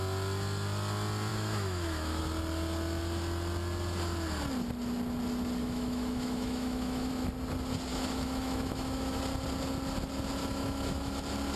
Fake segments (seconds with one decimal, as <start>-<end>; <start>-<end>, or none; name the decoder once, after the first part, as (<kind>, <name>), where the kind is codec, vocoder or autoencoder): 1.3-2.2 (autoencoder, DAC-VAE); 5.6-7.1; 7.9-9.2; 10.4-11.2

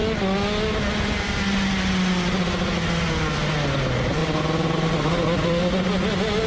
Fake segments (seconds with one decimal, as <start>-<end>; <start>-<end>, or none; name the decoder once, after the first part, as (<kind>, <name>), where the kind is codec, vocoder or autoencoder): none

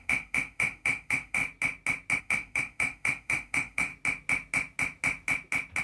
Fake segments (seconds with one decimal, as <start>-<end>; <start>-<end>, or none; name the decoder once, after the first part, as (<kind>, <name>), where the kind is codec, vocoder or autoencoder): 0.0-1.4 (autoencoder, DAC-VAE); 2.2-3.9

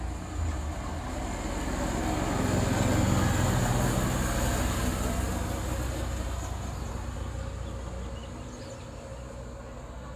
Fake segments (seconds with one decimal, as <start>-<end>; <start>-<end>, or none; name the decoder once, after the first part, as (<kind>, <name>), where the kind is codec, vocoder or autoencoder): none

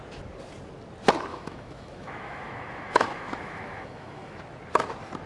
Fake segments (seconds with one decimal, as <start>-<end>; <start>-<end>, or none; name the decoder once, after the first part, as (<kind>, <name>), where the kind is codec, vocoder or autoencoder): 1.3-4.4 (autoencoder, DAC-VAE)